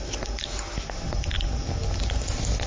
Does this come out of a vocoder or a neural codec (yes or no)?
no